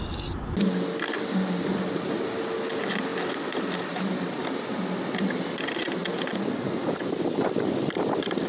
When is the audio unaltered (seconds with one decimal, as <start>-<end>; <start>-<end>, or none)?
0.0-8.5